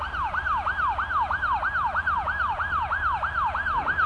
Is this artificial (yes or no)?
no